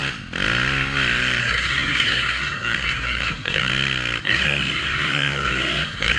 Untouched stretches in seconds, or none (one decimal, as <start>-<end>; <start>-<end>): 0.0-1.4; 3.7-4.2